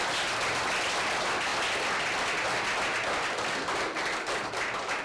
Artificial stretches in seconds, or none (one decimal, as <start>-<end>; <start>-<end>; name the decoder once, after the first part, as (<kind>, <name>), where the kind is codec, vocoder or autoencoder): 0.0-1.5 (vocoder, BigVGAN v2); 4.5-5.0